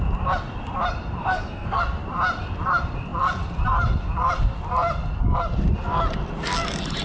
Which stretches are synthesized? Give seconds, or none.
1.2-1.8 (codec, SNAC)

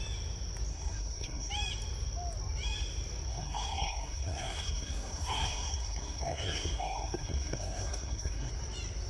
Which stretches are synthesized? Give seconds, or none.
0.7-1.5 (codec, SNAC); 3.3-8.5

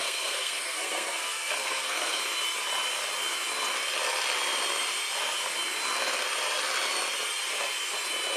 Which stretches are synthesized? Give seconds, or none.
0.0-2.2 (codec, SNAC)

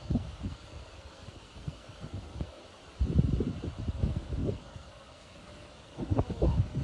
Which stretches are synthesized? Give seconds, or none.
0.0-2.6 (codec, SNAC); 3.9-6.8

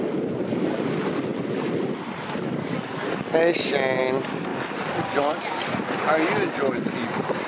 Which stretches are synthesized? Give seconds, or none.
none

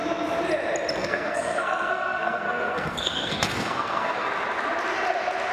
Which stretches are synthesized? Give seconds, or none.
1.0-4.3 (codec, SNAC)

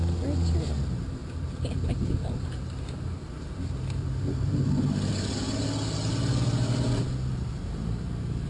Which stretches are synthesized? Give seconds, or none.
none

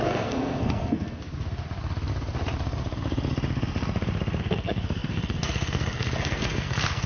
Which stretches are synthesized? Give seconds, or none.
0.0-1.3 (codec, SNAC); 4.4-7.1